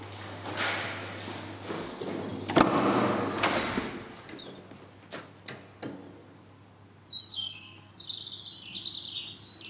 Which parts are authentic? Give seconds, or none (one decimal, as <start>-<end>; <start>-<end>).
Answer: 0.0-7.3; 7.9-9.7